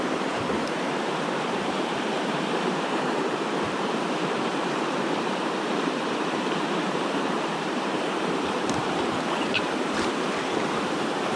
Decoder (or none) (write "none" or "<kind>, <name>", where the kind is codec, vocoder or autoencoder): vocoder, BigVGAN v2